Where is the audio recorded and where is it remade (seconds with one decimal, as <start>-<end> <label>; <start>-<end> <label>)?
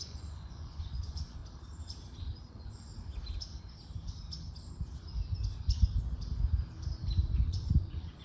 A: 0.0-1.4 remade; 1.4-2.5 recorded; 2.5-2.9 remade; 2.9-7.4 recorded; 7.4-8.2 remade